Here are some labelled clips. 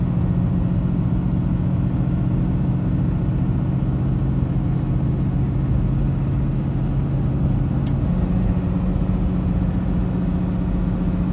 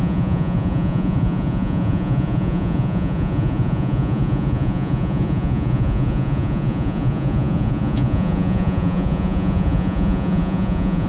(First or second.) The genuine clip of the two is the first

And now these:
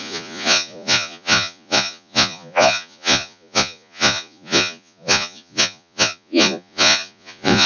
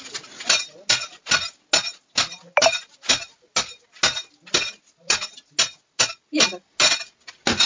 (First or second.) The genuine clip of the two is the second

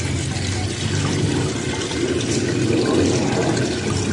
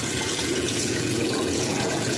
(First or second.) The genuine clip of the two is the first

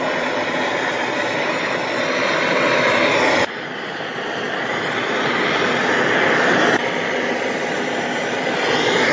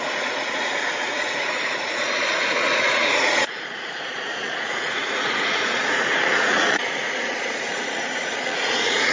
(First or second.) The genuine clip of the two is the first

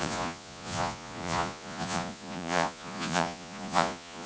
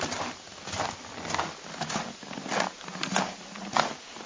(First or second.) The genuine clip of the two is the second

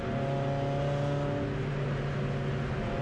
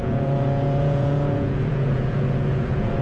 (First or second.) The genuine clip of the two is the first